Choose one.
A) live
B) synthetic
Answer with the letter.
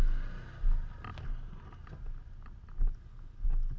A